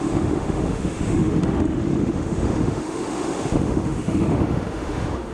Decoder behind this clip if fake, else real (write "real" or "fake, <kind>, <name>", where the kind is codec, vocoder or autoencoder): fake, autoencoder, DAC-VAE